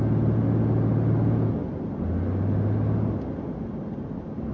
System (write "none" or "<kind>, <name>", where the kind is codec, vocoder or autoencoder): none